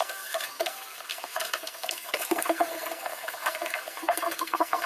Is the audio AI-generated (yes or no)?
yes